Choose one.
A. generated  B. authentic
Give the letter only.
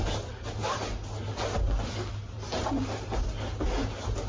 B